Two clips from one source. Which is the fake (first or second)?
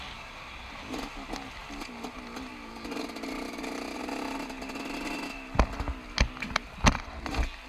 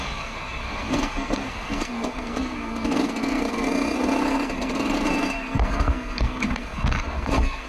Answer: second